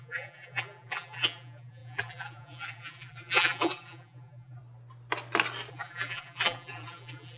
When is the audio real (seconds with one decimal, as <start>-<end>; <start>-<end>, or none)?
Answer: 4.6-5.7